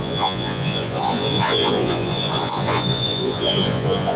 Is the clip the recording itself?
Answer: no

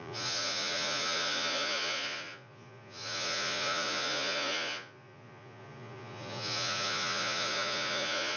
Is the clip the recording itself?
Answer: no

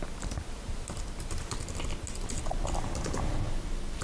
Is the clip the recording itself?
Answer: yes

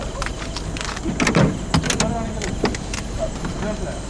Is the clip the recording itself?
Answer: yes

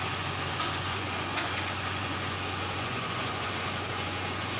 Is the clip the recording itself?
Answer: no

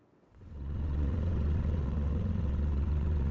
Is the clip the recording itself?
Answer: no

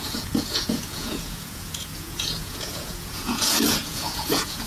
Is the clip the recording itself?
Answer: no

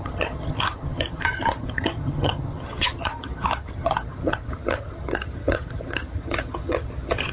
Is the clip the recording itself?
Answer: no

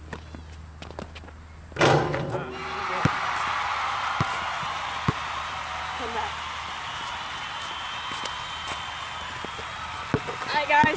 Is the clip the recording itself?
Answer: yes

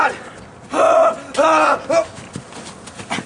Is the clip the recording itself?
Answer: yes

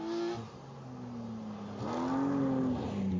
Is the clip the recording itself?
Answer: yes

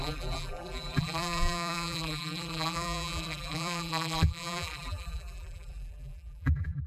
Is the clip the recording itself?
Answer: no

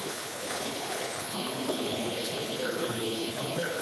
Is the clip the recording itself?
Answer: no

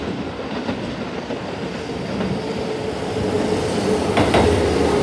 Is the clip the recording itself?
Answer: yes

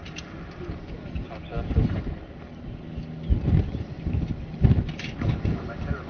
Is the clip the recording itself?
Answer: yes